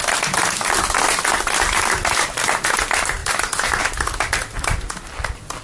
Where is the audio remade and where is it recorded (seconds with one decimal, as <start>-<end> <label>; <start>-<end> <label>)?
0.0-3.2 recorded; 3.2-3.8 remade; 3.8-5.6 recorded